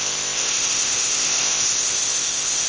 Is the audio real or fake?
fake